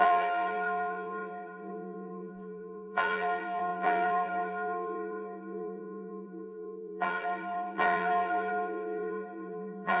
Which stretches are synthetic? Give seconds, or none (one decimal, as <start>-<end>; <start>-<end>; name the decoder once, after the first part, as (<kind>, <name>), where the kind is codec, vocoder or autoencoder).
0.0-10.0 (vocoder, BigVGAN v2)